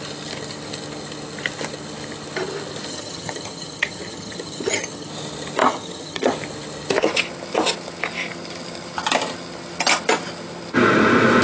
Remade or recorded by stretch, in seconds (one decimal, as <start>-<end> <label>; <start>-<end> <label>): 0.0-2.9 recorded; 2.9-5.1 remade; 5.1-5.6 recorded; 5.6-6.3 remade; 6.3-11.4 recorded